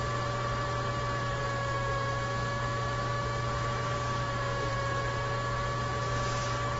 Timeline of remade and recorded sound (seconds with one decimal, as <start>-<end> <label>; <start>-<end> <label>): 0.0-1.4 recorded; 1.4-4.7 remade; 4.7-6.8 recorded